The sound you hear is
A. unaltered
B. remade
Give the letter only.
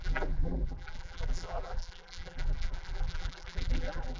B